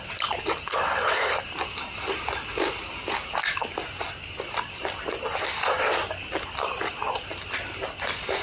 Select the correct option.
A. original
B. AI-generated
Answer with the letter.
A